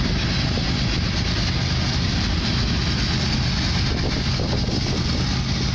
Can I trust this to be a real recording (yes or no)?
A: yes